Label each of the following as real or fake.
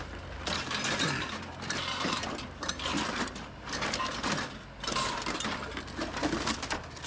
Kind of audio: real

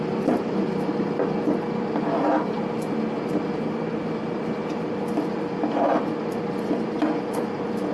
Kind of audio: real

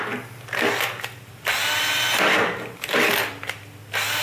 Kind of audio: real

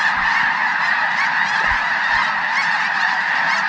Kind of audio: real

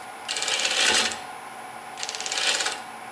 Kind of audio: real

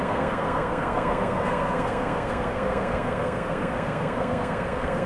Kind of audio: fake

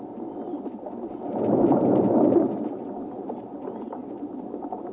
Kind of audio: real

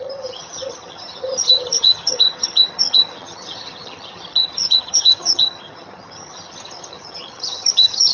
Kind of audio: fake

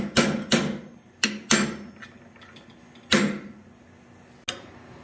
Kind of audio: real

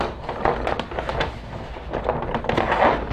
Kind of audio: real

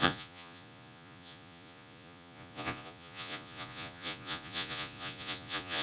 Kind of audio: fake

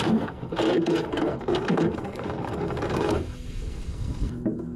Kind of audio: fake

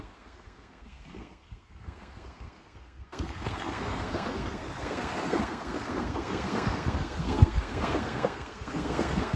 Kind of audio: fake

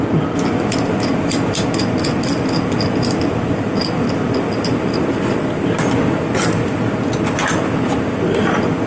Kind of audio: real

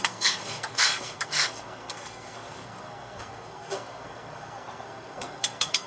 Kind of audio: fake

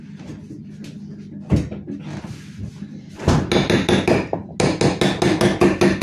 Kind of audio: real